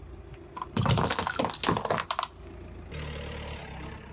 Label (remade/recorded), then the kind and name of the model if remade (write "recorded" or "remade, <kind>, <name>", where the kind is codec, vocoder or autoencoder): recorded